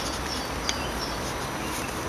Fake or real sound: real